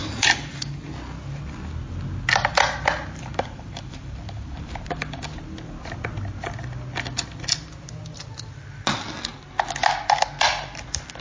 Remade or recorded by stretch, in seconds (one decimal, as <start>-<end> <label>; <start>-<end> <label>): 0.0-0.6 remade; 0.6-3.3 recorded; 3.3-5.2 remade; 5.2-11.2 recorded

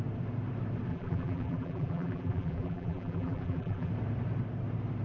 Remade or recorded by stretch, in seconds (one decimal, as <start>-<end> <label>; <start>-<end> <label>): 0.0-0.9 recorded; 0.9-3.9 remade; 3.9-5.0 recorded

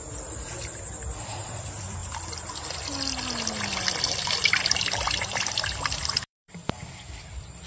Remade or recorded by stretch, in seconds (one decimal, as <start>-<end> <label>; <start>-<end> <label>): 0.0-2.0 remade; 2.0-4.0 recorded; 4.0-7.7 remade

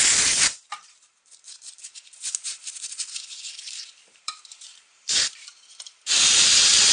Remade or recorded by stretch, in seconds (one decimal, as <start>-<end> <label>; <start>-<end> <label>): 0.0-6.9 remade

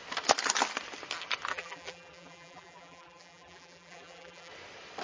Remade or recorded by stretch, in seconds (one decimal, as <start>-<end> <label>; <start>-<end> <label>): 0.0-1.5 recorded; 1.5-4.5 remade; 4.5-5.0 recorded

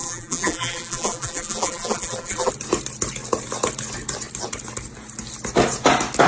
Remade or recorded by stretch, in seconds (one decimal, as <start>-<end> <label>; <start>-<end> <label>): 0.0-2.5 remade; 2.5-6.3 recorded

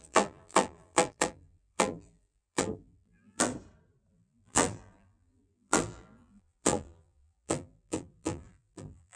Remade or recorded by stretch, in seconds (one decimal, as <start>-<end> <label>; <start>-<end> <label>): 0.0-3.5 remade; 3.5-4.1 recorded; 4.1-9.2 remade

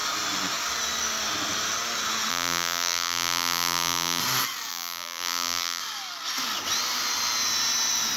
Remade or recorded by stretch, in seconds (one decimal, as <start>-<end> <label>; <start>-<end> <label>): 0.0-2.3 recorded; 2.3-4.2 remade; 4.2-4.7 recorded; 4.7-5.8 remade; 5.8-8.2 recorded